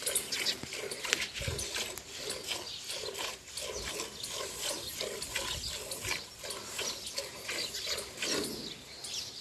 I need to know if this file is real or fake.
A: real